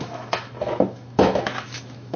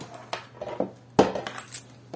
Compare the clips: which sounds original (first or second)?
second